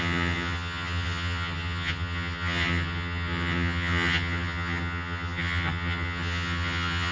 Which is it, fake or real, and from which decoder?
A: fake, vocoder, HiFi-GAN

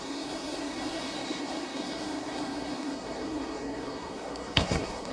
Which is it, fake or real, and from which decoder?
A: fake, codec, SNAC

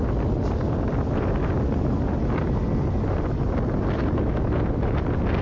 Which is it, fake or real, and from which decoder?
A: real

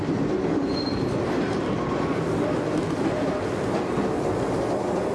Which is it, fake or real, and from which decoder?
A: real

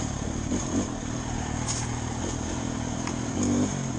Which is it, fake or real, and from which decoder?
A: fake, vocoder, BigVGAN v2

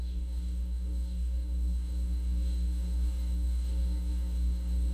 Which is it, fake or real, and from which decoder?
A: fake, codec, DAC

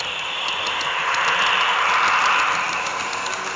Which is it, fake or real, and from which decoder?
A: real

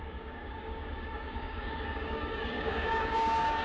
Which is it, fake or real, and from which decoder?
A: fake, codec, DAC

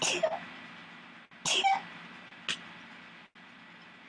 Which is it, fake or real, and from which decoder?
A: real